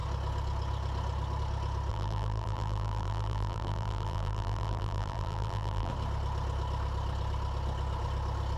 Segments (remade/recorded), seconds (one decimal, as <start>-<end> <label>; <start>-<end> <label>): 0.0-1.9 recorded; 1.9-5.9 remade; 5.9-8.6 recorded